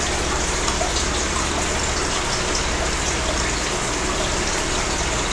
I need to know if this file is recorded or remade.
recorded